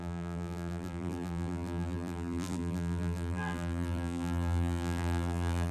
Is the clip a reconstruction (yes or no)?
yes